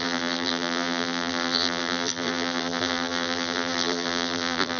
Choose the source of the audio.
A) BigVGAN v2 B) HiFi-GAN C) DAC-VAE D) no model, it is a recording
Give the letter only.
A